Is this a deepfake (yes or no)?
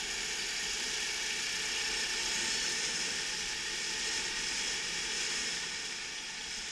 no